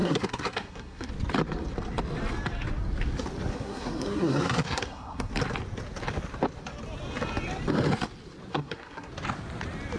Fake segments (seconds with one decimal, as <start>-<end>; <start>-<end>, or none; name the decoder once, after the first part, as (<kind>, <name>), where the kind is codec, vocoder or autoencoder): 0.0-1.1 (codec, SNAC); 3.5-5.3; 8.5-9.1